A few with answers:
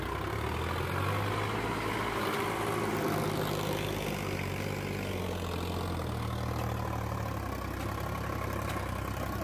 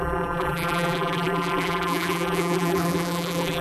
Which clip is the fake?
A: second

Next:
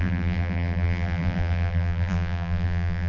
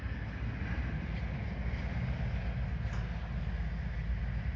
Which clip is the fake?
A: first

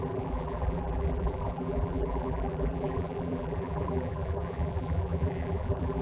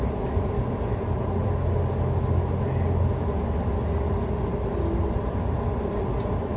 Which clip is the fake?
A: first